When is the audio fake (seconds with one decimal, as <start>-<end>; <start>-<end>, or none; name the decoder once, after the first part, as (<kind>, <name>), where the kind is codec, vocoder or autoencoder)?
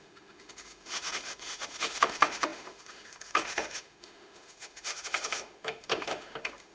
0.0-6.7 (autoencoder, DAC-VAE)